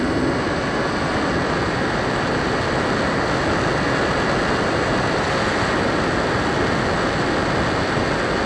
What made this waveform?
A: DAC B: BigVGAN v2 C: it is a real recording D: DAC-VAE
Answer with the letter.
C